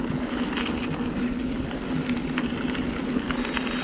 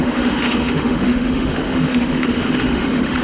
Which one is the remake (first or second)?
second